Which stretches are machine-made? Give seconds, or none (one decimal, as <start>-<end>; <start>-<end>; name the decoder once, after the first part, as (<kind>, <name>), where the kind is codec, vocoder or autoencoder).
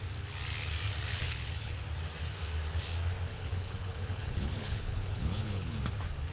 1.1-1.8 (codec, HILCodec); 3.3-5.8